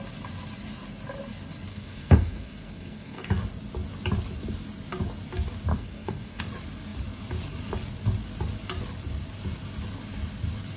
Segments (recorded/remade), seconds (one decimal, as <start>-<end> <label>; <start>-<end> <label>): 0.0-1.7 recorded; 1.7-3.3 remade; 3.3-5.7 recorded; 5.7-6.4 remade; 6.4-10.8 recorded